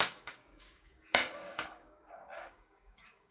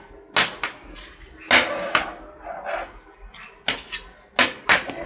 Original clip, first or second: second